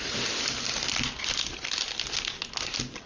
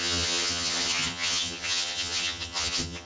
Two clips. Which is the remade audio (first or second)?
second